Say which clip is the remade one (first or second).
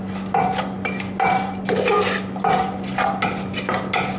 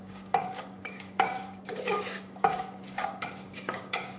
second